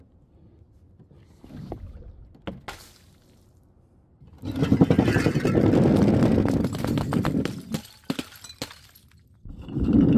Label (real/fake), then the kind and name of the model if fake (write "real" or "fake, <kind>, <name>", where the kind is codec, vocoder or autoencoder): real